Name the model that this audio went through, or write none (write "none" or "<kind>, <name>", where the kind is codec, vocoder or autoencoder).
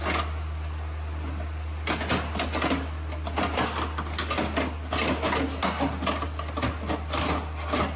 none